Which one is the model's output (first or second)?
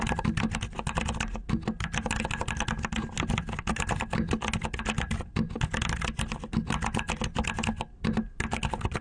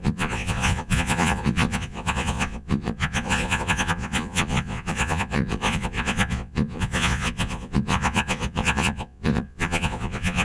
second